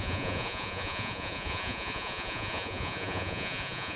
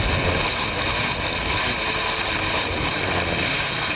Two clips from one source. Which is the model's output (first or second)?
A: first